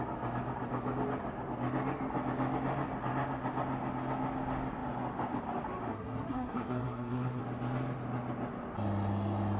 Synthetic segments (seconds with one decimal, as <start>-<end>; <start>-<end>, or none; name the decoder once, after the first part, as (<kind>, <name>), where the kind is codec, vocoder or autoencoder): 5.9-7.4 (codec, SNAC)